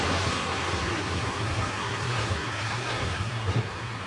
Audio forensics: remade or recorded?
remade